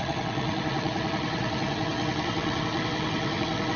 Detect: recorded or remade remade